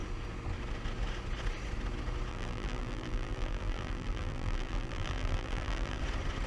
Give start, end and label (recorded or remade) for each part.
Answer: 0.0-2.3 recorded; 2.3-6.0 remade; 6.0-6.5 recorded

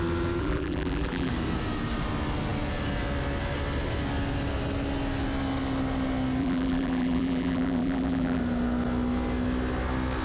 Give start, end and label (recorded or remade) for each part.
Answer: 0.0-0.4 recorded; 0.4-1.3 remade; 1.3-6.4 recorded; 6.4-8.4 remade; 8.4-10.2 recorded

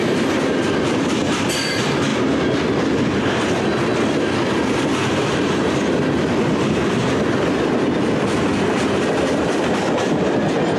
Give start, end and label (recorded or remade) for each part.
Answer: 0.0-2.1 remade; 2.1-4.6 recorded; 4.6-8.5 remade; 8.5-9.3 recorded; 9.3-10.8 remade

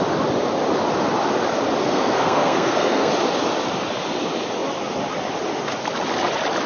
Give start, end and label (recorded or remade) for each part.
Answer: 0.0-1.8 recorded; 1.8-3.1 remade; 3.1-6.7 recorded

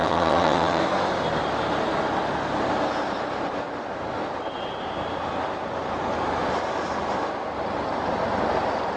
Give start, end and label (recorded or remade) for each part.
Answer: 0.0-0.8 remade; 0.8-9.0 recorded

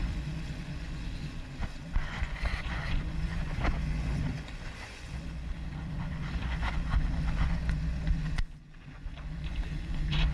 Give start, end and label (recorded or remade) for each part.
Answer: 0.0-10.3 remade